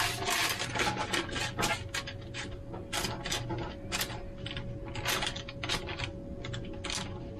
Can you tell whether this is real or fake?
real